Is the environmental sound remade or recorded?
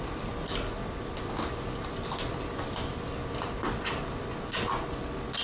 recorded